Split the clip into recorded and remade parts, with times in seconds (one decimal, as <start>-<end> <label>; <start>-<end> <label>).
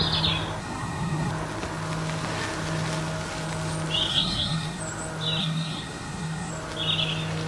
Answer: 0.0-0.6 recorded; 0.6-1.3 remade; 1.3-4.1 recorded; 4.1-4.8 remade; 4.8-5.4 recorded; 5.4-6.5 remade; 6.5-7.5 recorded